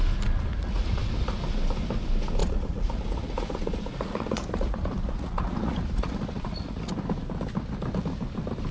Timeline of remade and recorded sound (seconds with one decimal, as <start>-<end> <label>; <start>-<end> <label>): 0.0-0.5 recorded; 0.5-1.0 remade; 1.0-2.4 recorded; 2.4-6.9 remade; 6.9-8.7 recorded